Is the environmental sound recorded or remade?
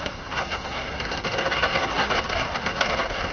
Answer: remade